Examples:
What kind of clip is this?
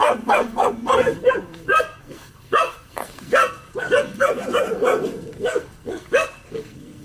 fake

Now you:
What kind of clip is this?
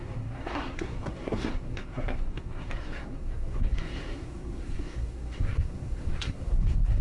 fake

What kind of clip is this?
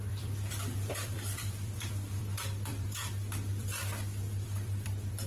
fake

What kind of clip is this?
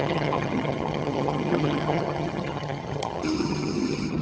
fake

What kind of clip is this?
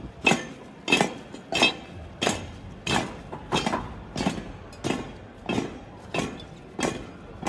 real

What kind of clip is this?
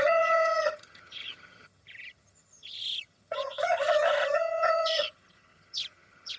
fake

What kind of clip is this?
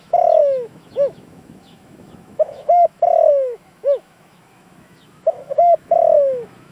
fake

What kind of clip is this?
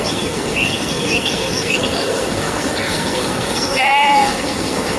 fake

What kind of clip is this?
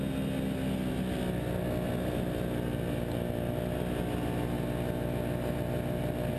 real